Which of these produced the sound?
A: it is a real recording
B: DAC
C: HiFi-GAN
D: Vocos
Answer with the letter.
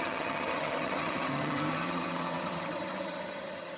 C